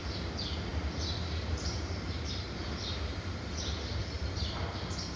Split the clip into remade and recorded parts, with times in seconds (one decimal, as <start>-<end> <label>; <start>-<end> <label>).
0.0-0.7 recorded; 0.7-3.5 remade; 3.5-4.0 recorded; 4.0-4.6 remade; 4.6-5.2 recorded